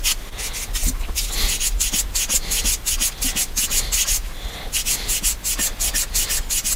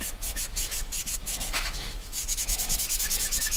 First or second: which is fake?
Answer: second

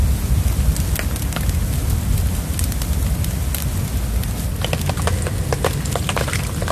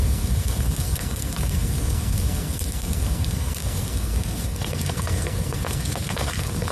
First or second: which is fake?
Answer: second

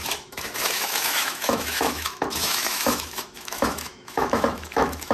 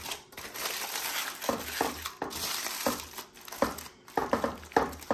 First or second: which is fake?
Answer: first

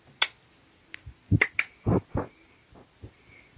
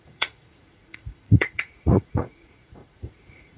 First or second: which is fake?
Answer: second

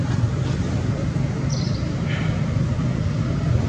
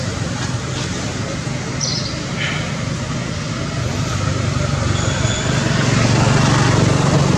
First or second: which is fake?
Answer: first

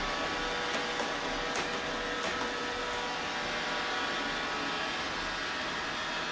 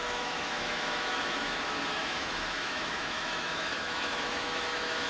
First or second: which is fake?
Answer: second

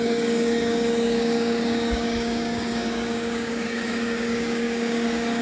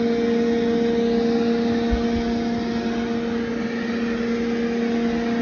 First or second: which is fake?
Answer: first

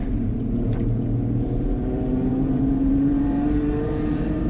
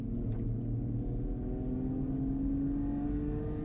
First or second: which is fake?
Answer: first